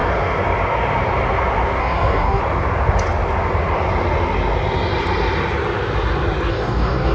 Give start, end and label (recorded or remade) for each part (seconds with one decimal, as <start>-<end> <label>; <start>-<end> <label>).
0.0-1.8 recorded; 1.8-2.4 remade; 2.4-6.5 recorded; 6.5-7.1 remade